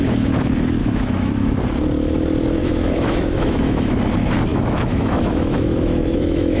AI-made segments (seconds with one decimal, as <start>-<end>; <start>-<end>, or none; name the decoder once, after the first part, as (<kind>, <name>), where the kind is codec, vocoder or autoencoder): 0.8-1.5 (autoencoder, DAC-VAE); 2.6-4.0; 4.5-6.6